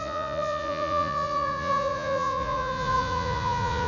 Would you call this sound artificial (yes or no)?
yes